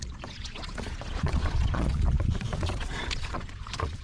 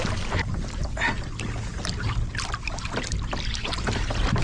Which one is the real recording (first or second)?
second